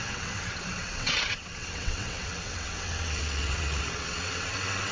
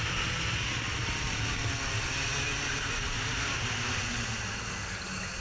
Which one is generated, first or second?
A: first